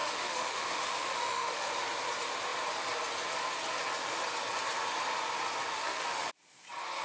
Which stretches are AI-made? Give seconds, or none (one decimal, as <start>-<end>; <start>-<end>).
0.0-1.7; 5.7-6.3